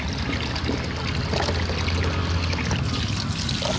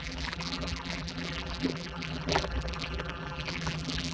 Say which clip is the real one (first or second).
first